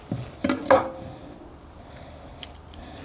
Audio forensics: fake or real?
real